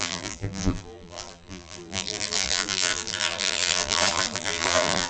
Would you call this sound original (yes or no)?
no